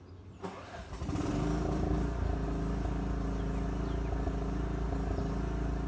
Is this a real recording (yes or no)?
yes